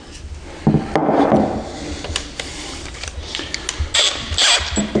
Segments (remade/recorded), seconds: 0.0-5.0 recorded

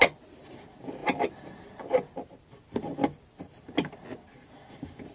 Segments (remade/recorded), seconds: 0.0-5.1 recorded

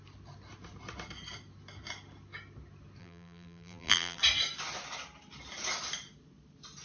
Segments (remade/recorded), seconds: 0.0-3.0 recorded; 3.0-4.2 remade; 4.2-6.8 recorded

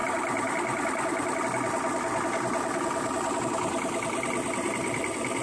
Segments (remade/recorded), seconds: 0.0-5.4 recorded

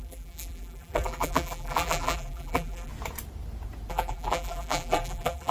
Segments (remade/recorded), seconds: 0.0-2.9 remade; 2.9-3.9 recorded; 3.9-5.5 remade